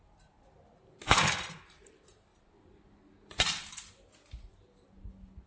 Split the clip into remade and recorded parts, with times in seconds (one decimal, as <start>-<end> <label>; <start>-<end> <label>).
0.0-5.5 recorded

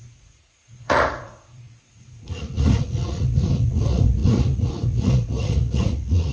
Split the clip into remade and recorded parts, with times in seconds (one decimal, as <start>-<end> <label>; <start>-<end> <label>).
0.0-6.3 remade

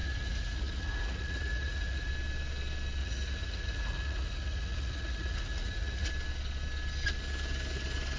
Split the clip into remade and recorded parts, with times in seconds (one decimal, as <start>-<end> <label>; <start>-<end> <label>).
0.0-2.1 remade; 2.1-3.0 recorded; 3.0-6.1 remade; 6.1-8.2 recorded

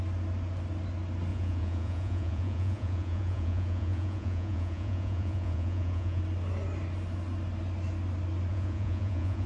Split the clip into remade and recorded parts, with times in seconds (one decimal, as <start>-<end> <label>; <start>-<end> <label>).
0.0-1.3 recorded; 1.3-6.2 remade; 6.2-8.5 recorded; 8.5-9.5 remade

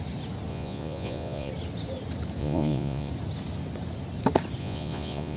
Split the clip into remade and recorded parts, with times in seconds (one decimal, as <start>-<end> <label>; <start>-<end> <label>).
0.0-0.5 recorded; 0.5-1.5 remade; 1.5-2.4 recorded; 2.4-3.1 remade; 3.1-4.6 recorded; 4.6-5.4 remade

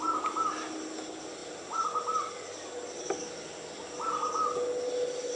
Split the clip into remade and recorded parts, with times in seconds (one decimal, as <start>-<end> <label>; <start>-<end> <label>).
0.0-5.4 recorded

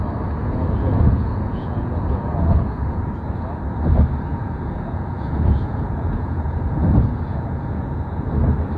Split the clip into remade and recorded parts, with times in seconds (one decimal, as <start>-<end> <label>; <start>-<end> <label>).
0.0-0.4 recorded; 0.4-3.1 remade; 3.1-4.3 recorded; 4.3-8.3 remade; 8.3-8.8 recorded